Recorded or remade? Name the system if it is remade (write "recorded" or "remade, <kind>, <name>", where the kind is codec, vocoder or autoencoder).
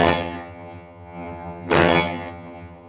remade, vocoder, HiFi-GAN